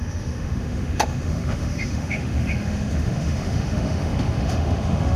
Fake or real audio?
fake